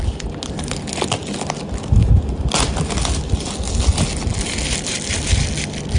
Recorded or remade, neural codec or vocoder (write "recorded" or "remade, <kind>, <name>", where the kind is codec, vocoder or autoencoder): recorded